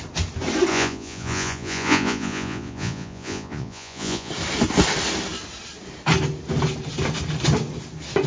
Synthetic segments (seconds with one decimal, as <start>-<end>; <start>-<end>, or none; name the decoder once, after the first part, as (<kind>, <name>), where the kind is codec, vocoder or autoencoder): 0.7-4.3 (vocoder, Vocos)